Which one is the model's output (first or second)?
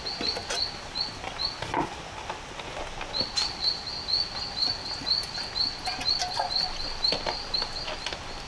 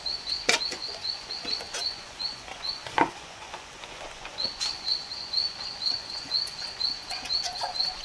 second